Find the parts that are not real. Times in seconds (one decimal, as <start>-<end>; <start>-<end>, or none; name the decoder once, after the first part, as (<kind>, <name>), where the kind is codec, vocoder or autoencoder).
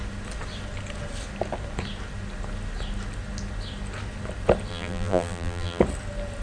4.7-5.8 (vocoder, BigVGAN v2)